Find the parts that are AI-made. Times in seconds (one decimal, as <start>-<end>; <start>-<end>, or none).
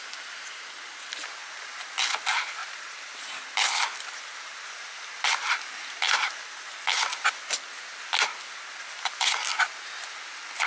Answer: 2.6-3.2